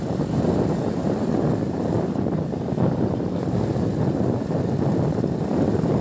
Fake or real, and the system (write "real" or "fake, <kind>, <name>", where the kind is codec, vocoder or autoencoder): fake, vocoder, BigVGAN v2